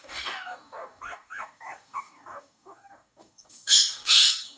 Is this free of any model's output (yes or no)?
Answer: no